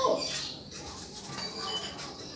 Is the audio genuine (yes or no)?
yes